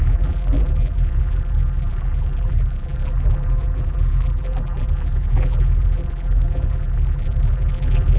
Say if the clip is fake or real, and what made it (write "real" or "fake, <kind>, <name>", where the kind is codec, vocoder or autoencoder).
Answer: fake, vocoder, BigVGAN v2